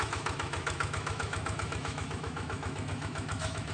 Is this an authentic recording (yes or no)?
no